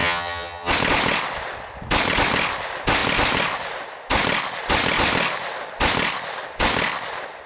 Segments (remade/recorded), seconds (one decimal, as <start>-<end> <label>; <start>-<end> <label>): 0.0-0.7 remade; 0.7-7.5 recorded